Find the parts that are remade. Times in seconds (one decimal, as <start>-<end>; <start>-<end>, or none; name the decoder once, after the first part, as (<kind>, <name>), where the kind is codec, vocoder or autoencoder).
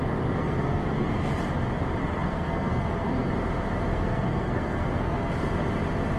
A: 0.4-1.4 (codec, SNAC); 2.0-3.3; 3.9-5.3